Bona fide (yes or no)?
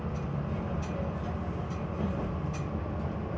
yes